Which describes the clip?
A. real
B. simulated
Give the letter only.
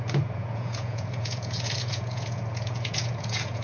B